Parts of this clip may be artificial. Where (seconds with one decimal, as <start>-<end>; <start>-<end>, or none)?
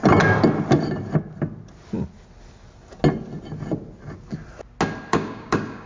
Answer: 5.1-5.9